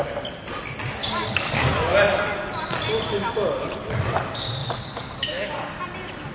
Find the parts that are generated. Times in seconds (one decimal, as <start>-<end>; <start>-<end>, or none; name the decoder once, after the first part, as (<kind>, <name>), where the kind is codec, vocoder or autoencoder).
1.0-1.7 (codec, DAC); 4.6-5.7